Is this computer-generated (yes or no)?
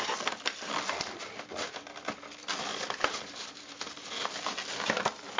no